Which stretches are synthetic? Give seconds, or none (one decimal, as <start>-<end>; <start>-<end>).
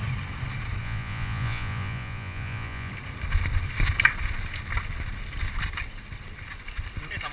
0.8-2.9